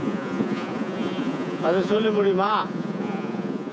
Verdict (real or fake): fake